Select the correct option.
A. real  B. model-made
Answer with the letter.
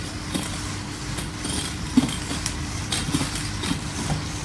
A